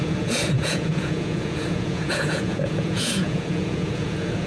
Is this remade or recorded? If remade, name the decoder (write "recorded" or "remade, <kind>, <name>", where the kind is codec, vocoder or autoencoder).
remade, vocoder, Vocos